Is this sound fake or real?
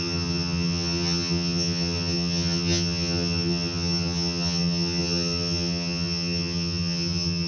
fake